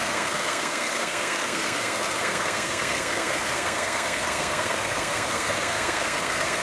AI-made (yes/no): yes